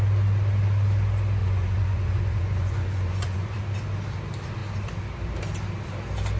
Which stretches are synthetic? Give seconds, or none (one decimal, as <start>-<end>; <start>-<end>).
1.4-3.6